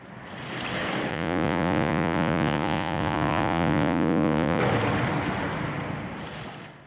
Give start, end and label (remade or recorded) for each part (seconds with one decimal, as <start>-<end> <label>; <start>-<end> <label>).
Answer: 0.0-1.1 recorded; 1.1-4.6 remade; 4.6-6.9 recorded